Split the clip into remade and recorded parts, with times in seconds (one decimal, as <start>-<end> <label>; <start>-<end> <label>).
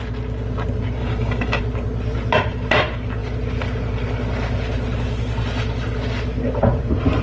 0.0-1.0 recorded; 1.0-1.6 remade; 1.6-7.2 recorded